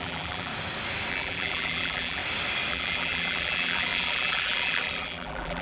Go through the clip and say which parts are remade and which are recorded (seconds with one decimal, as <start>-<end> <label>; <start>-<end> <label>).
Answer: 0.0-0.5 remade; 0.5-1.1 recorded; 1.1-2.2 remade; 2.2-2.7 recorded; 2.7-5.6 remade